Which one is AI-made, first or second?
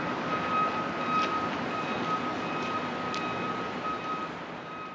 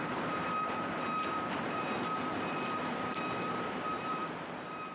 second